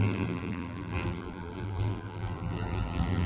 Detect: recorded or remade remade